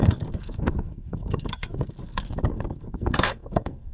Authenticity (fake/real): fake